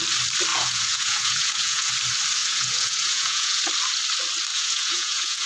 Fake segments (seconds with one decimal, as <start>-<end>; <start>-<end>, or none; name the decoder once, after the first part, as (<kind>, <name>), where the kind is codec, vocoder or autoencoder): 0.5-1.9 (vocoder, Vocos); 2.4-3.6; 4.5-5.5